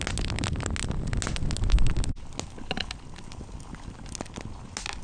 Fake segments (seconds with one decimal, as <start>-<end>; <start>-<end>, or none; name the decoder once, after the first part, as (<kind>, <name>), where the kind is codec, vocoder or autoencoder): none